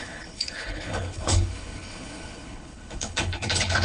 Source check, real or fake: fake